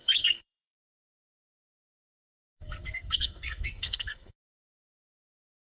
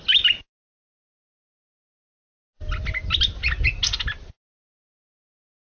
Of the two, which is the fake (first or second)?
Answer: first